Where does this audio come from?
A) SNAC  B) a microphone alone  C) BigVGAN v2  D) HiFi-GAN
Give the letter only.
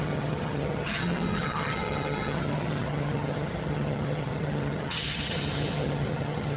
D